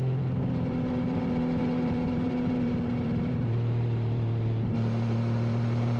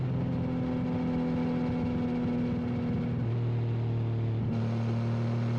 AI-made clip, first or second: first